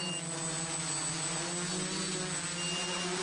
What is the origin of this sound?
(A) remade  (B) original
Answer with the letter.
B